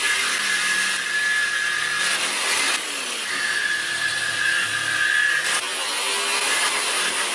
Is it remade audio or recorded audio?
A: recorded